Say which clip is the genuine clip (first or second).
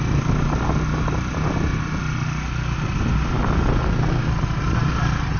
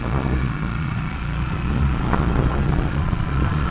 first